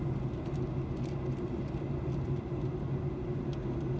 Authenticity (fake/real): real